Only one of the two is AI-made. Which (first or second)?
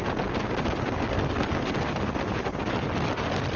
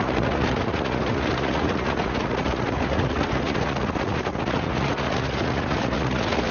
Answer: second